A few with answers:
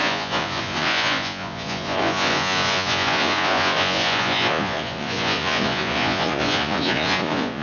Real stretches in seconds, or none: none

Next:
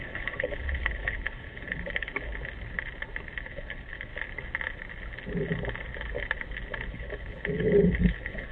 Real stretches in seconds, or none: 2.1-3.4; 4.1-6.9